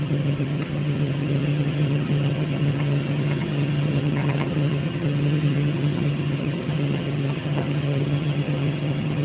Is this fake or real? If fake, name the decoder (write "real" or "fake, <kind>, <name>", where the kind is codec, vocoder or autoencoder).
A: fake, vocoder, HiFi-GAN